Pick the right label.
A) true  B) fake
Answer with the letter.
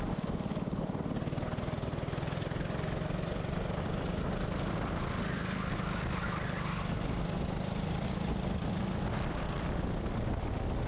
A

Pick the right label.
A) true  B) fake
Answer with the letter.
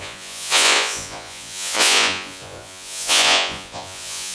B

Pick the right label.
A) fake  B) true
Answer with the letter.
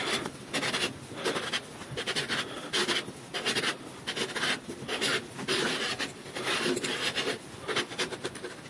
B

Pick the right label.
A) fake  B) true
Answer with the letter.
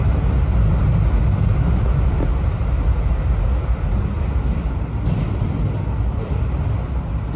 B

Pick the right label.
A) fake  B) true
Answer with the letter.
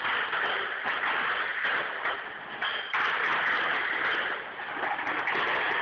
B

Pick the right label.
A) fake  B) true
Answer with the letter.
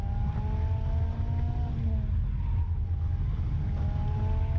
B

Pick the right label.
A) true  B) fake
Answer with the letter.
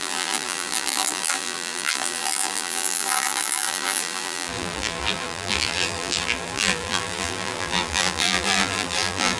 B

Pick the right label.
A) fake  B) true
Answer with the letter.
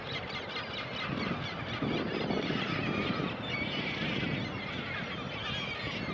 B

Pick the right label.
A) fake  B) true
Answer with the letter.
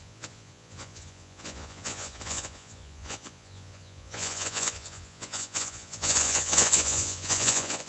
A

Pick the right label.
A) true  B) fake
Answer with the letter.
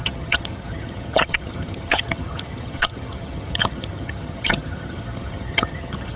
B